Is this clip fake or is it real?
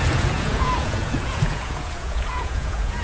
fake